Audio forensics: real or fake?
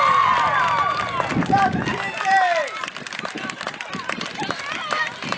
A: real